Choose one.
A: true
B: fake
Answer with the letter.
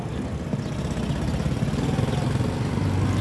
A